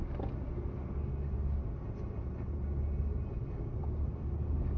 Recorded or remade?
recorded